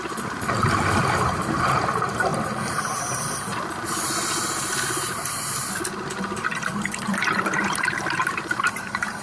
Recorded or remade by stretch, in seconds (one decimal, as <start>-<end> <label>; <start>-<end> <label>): 0.0-9.2 recorded